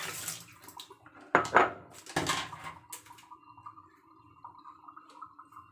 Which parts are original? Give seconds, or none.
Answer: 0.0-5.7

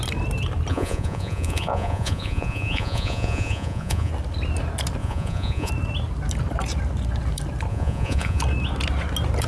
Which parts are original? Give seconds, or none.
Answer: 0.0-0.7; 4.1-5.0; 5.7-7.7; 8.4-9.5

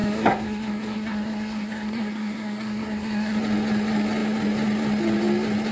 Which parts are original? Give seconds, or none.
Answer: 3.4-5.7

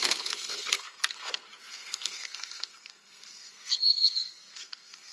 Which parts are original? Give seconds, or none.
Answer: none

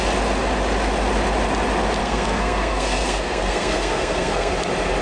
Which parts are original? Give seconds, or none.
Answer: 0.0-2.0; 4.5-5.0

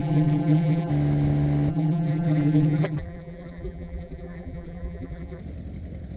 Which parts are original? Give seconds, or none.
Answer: 0.9-1.7; 5.4-6.2